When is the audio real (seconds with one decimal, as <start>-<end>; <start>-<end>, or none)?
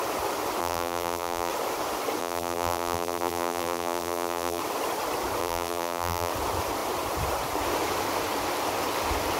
0.0-0.6; 1.5-2.2; 4.6-5.4; 6.3-9.4